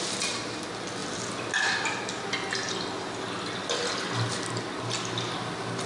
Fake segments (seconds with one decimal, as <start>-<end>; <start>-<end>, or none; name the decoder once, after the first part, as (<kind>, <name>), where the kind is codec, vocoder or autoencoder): none

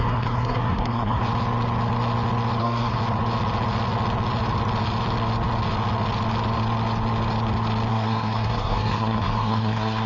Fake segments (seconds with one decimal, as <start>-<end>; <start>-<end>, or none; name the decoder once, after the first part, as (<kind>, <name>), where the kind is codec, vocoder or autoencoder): 0.0-1.2 (codec, SNAC); 2.6-3.0; 7.9-10.1

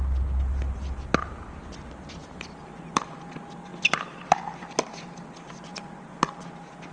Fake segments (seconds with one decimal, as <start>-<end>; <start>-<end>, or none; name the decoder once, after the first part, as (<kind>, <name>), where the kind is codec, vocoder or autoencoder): 2.2-3.2 (vocoder, BigVGAN v2); 3.7-4.5